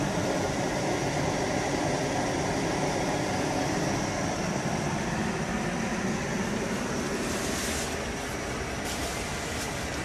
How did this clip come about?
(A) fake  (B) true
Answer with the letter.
B